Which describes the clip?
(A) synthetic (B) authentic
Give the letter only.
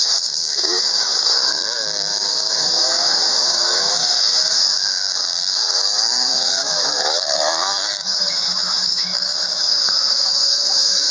A